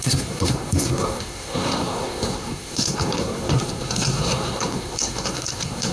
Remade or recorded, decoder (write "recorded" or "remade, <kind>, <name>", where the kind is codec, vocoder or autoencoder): remade, codec, SNAC